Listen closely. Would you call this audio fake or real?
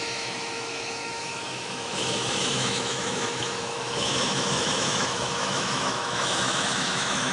fake